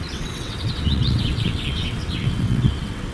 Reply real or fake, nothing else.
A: fake